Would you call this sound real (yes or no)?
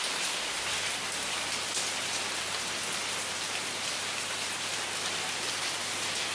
yes